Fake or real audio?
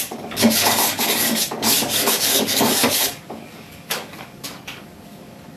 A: fake